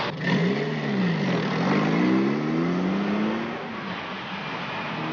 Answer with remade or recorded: recorded